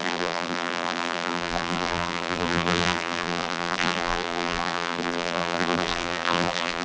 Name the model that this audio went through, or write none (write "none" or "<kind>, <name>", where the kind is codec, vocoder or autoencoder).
vocoder, BigVGAN v2